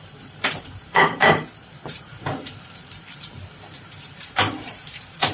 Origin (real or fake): fake